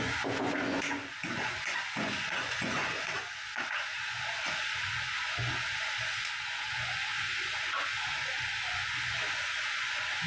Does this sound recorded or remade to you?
remade